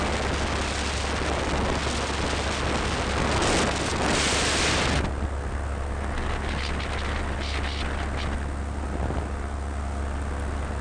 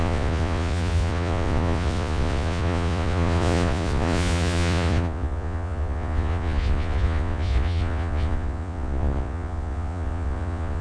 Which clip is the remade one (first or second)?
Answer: second